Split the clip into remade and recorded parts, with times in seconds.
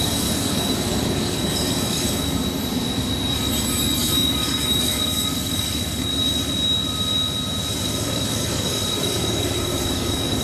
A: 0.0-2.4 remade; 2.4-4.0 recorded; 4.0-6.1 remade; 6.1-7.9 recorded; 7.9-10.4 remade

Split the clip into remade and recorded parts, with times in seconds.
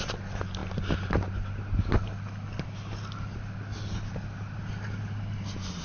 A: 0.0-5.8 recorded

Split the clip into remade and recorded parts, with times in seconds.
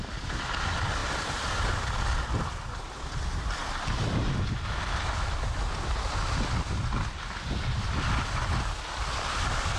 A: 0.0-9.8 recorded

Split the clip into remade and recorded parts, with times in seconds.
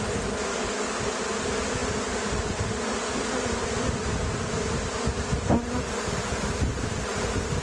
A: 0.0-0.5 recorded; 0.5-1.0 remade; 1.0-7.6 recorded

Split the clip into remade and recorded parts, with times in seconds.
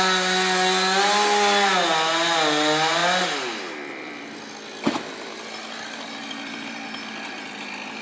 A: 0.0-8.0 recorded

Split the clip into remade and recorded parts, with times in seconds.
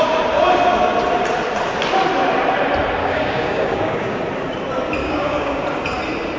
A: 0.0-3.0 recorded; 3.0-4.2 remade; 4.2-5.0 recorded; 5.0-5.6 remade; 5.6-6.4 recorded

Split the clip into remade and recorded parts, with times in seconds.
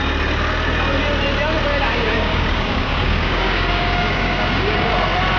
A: 0.0-1.7 recorded; 1.7-4.9 remade; 4.9-5.4 recorded